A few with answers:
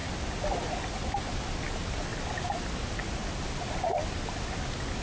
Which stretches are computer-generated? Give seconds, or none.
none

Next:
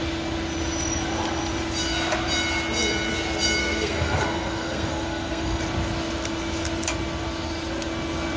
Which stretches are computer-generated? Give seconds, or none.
3.6-5.6 (codec, SNAC)